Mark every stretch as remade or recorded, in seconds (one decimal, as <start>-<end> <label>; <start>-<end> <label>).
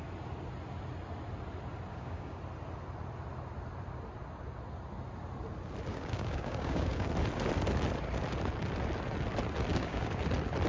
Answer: 0.0-1.9 recorded; 1.9-2.4 remade; 2.4-5.9 recorded; 5.9-7.1 remade; 7.1-9.7 recorded; 9.7-10.2 remade; 10.2-10.7 recorded